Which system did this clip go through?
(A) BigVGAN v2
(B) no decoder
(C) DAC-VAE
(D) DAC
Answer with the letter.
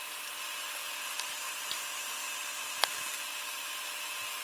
B